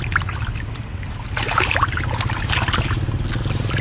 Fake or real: real